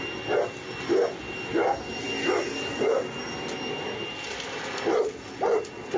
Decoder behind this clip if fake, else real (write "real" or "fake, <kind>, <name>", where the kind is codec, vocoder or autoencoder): real